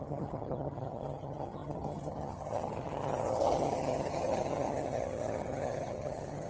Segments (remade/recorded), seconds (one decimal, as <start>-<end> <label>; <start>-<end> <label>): 0.0-6.5 remade